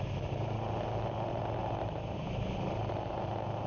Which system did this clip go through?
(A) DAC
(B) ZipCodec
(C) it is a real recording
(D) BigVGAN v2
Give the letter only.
C